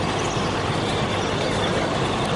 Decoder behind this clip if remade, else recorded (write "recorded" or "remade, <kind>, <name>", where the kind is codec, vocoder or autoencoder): recorded